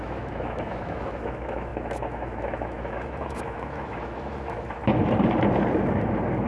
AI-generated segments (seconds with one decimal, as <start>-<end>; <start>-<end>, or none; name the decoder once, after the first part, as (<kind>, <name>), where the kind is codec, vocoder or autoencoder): 0.0-4.8 (autoencoder, DAC-VAE)